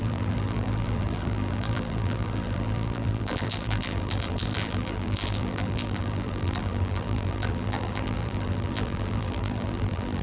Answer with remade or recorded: remade